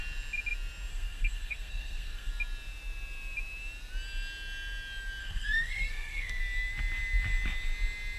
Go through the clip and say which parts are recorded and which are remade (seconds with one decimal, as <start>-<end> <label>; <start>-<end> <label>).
0.0-0.9 recorded; 0.9-2.3 remade; 2.3-5.2 recorded; 5.2-6.4 remade; 6.4-8.2 recorded